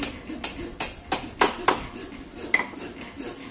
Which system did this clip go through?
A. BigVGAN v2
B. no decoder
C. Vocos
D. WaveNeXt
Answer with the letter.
B